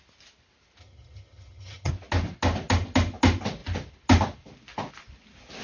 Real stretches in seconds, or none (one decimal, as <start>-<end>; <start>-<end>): 0.0-0.8; 1.9-5.6